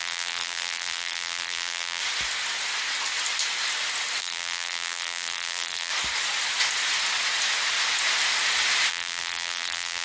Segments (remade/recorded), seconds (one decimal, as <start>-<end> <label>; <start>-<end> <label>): 0.0-2.0 remade; 2.0-4.2 recorded; 4.2-5.9 remade; 5.9-8.9 recorded; 8.9-10.0 remade